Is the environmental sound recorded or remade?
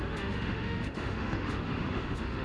remade